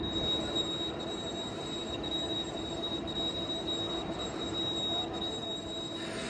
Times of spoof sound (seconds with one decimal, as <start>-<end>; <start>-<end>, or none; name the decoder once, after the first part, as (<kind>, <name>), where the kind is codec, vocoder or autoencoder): none